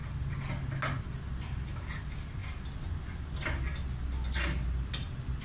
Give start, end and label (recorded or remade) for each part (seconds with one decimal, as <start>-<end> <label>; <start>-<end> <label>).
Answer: 0.0-5.4 recorded